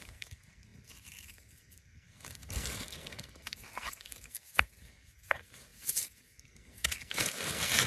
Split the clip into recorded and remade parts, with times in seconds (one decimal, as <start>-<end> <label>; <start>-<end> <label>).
0.0-7.9 remade